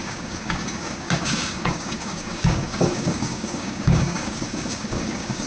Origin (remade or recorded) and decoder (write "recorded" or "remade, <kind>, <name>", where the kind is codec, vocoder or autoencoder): remade, codec, DAC